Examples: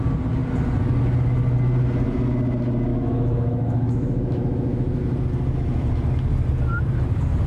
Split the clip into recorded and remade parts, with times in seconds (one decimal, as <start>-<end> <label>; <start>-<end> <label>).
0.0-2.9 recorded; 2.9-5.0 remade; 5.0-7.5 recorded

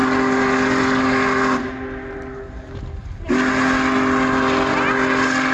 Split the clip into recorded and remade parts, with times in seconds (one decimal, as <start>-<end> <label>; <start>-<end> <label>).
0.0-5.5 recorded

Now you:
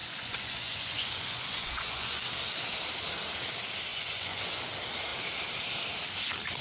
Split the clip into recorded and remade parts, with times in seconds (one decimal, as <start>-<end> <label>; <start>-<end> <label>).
0.0-2.2 remade; 2.2-3.9 recorded; 3.9-4.6 remade; 4.6-6.6 recorded

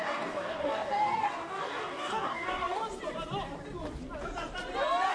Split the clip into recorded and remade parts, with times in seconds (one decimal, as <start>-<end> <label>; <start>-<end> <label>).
0.0-2.8 remade; 2.8-5.1 recorded

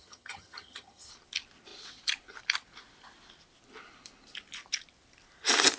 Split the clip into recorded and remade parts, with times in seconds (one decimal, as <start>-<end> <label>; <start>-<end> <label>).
0.0-1.1 remade; 1.1-5.8 recorded